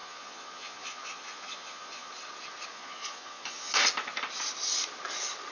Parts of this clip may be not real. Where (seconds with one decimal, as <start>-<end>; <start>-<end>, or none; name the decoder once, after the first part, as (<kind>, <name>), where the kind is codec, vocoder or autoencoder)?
0.0-2.1 (vocoder, Vocos); 2.7-3.7

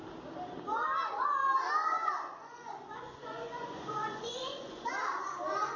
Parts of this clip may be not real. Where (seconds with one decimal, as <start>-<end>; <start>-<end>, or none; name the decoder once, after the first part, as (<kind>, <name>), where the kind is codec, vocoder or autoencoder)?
1.8-4.9 (vocoder, Vocos)

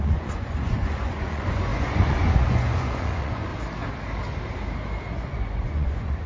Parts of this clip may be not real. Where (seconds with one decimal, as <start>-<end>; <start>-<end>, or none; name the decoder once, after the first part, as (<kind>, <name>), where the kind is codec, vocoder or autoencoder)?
0.0-3.5 (vocoder, Vocos); 5.1-6.3

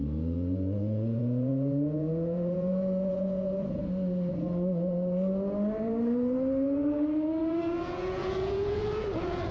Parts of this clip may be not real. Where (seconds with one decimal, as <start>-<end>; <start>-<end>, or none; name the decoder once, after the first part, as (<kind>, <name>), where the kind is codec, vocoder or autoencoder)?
0.0-3.8 (vocoder, Vocos); 7.4-9.5

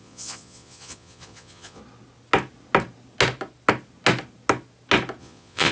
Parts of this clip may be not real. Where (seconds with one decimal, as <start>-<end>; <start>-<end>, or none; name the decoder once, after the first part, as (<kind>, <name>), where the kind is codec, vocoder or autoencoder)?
0.0-1.8 (vocoder, Vocos); 5.2-5.7

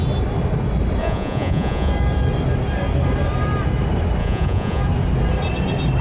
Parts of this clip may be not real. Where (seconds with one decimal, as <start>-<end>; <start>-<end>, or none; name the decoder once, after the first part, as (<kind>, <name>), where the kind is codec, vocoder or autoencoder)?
1.0-1.9 (vocoder, Vocos); 4.2-4.8

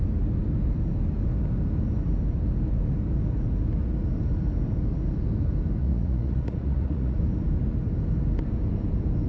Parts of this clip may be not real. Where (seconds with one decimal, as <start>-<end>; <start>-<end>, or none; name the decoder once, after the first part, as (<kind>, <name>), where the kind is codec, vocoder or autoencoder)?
5.8-7.2 (vocoder, Vocos)

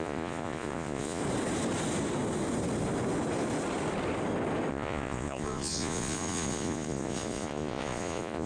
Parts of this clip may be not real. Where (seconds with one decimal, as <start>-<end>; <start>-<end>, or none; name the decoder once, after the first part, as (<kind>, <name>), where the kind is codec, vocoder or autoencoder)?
0.0-1.2 (vocoder, Vocos); 4.7-8.5